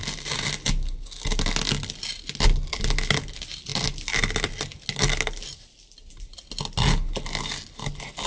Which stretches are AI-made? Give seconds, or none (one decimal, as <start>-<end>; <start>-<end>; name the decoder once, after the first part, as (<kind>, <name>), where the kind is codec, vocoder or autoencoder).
none